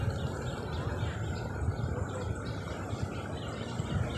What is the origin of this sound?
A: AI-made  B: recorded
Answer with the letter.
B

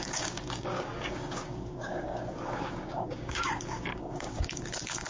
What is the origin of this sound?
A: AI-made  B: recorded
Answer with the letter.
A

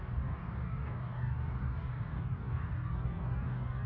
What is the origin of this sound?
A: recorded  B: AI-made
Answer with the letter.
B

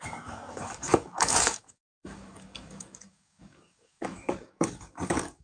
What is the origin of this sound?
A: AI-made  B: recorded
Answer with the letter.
A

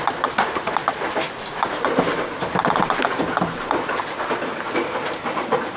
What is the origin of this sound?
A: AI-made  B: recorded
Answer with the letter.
B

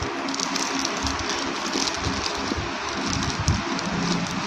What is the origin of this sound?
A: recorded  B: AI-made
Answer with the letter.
A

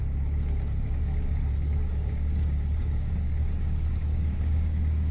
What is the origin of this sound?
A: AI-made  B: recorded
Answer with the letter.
A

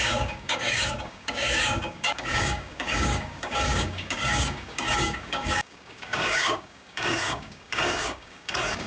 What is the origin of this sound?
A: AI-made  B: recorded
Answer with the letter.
A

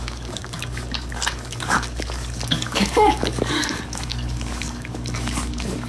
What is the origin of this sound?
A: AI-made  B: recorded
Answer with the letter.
A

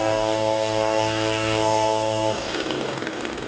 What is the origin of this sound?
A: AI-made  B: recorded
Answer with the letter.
A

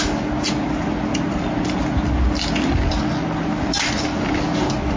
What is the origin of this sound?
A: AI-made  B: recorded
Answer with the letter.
B